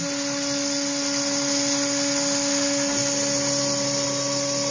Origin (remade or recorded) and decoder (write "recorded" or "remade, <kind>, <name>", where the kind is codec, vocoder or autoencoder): recorded